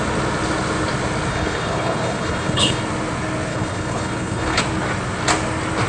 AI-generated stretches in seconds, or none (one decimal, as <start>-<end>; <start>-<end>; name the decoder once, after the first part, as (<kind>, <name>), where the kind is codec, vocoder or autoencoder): 1.3-2.8 (codec, HILCodec); 3.5-4.6